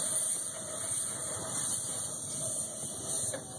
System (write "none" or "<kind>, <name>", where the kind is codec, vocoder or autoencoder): none